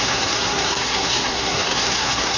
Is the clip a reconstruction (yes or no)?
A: yes